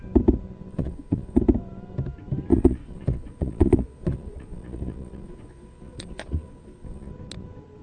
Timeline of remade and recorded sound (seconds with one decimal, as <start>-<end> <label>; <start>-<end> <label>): 0.0-0.7 recorded; 0.7-1.4 remade; 1.4-2.5 recorded; 2.5-7.1 remade; 7.1-7.8 recorded